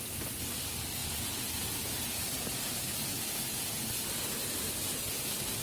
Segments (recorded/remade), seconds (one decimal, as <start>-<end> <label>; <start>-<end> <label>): 0.0-1.0 recorded; 1.0-3.8 remade; 3.8-5.6 recorded

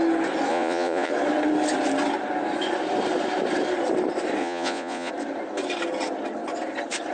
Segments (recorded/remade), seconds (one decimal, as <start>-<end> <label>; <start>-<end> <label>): 0.0-0.5 recorded; 0.5-1.1 remade; 1.1-4.4 recorded; 4.4-5.1 remade; 5.1-7.1 recorded

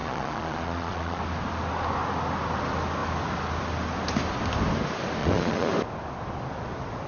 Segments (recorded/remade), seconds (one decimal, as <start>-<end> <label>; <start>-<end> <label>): 0.0-1.2 remade; 1.2-5.2 recorded; 5.2-5.7 remade; 5.7-7.1 recorded